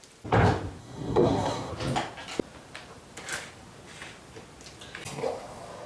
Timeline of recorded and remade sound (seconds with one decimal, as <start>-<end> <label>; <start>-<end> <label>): 0.0-0.8 recorded; 0.8-1.7 remade; 1.7-5.9 recorded